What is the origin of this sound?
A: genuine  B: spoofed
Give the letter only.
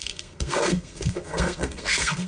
B